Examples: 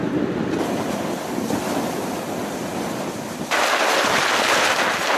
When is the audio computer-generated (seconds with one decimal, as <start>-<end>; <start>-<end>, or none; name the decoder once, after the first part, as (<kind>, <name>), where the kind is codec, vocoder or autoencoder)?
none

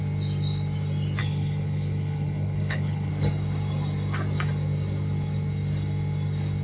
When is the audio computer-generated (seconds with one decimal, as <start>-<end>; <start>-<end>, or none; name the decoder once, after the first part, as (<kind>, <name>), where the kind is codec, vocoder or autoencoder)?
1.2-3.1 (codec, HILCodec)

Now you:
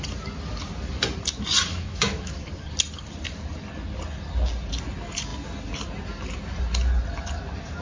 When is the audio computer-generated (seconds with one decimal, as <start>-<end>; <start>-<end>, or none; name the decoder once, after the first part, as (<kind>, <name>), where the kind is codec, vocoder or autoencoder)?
1.7-2.5 (autoencoder, DAC-VAE)

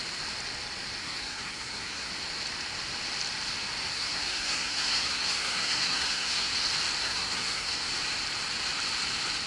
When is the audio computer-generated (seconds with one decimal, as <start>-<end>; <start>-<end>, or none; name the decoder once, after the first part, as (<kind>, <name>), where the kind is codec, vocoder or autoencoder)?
1.0-2.1 (codec, SNAC); 3.9-6.5; 7.0-7.9